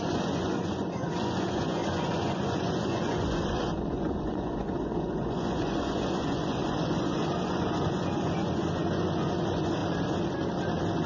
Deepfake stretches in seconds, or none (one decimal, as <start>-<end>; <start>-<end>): 0.0-9.8